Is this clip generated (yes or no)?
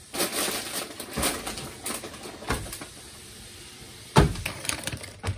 yes